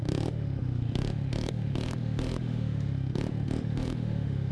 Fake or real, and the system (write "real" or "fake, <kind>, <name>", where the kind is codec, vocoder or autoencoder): fake, autoencoder, DAC-VAE